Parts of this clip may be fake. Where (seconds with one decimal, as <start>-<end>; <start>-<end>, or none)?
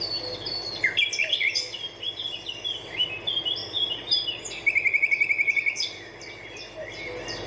3.6-4.4